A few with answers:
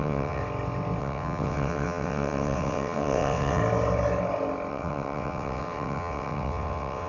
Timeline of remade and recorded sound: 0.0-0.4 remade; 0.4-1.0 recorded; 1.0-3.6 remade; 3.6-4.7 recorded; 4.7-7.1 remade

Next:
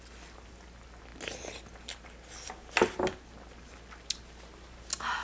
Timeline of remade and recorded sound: 0.0-5.2 recorded

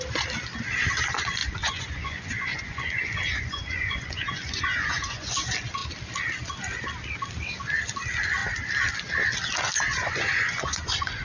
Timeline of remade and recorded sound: 0.0-1.4 recorded; 1.4-5.3 remade; 5.3-9.9 recorded; 9.9-11.2 remade

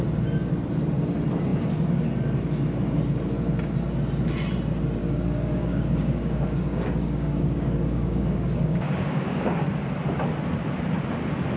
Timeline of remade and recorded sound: 0.0-5.0 recorded; 5.0-9.8 remade; 9.8-11.6 recorded

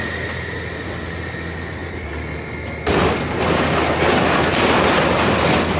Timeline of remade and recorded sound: 0.0-5.8 recorded

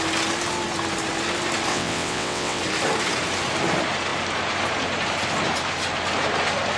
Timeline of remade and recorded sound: 0.0-1.7 recorded; 1.7-2.6 remade; 2.6-6.8 recorded